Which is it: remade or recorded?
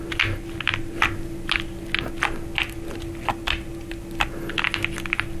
recorded